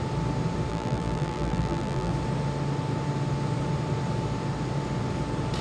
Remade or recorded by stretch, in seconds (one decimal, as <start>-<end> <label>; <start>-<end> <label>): 0.0-0.7 recorded; 0.7-2.1 remade; 2.1-5.6 recorded